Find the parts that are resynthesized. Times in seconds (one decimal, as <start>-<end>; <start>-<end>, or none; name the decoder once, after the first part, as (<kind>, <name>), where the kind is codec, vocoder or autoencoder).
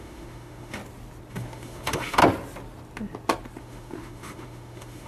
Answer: 0.0-0.8 (autoencoder, DAC-VAE); 1.3-2.2; 3.6-5.1